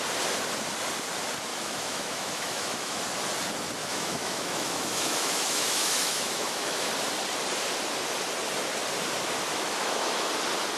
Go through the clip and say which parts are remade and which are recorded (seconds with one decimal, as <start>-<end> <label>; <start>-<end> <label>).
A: 0.0-1.5 recorded; 1.5-3.0 remade; 3.0-3.8 recorded; 3.8-6.9 remade; 6.9-9.5 recorded; 9.5-10.3 remade; 10.3-10.8 recorded